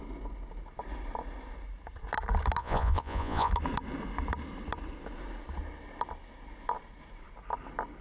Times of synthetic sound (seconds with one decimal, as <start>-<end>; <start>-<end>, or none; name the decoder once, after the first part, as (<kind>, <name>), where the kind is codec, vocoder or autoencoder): 2.6-3.5 (vocoder, Vocos)